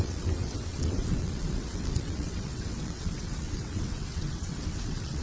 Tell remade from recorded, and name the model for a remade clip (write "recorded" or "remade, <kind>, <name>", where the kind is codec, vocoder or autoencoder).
remade, vocoder, WaveNeXt